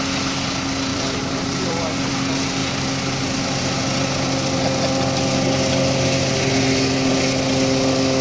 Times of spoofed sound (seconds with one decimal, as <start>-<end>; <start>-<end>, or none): 0.9-2.1

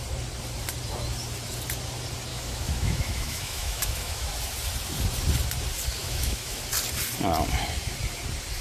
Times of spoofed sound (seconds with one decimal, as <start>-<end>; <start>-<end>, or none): 2.3-4.3; 6.0-6.6

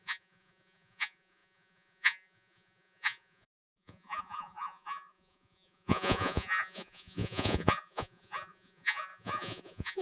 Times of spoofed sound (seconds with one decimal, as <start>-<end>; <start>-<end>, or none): 0.0-10.0

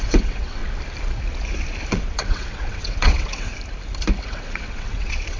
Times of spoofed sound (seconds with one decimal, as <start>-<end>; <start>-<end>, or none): 0.0-0.6; 1.9-3.5; 4.2-5.4

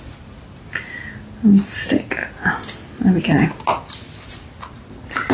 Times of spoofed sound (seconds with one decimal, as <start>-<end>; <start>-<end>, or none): none

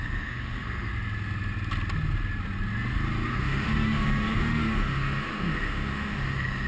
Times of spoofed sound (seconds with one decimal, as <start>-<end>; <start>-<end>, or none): 0.0-0.9; 3.3-6.7

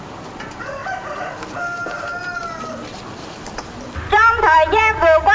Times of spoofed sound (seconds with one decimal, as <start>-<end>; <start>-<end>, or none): 0.0-2.9; 3.6-5.3